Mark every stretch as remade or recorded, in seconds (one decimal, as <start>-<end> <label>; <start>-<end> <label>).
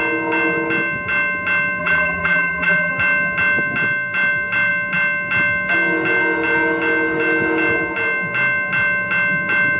0.0-1.8 recorded; 1.8-2.9 remade; 2.9-9.8 recorded